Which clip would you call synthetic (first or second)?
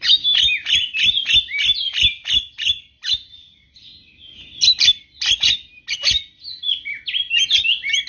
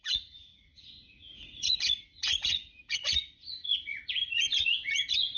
second